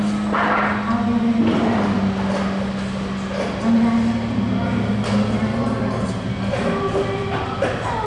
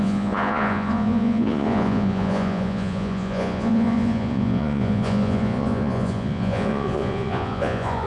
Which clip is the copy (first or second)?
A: second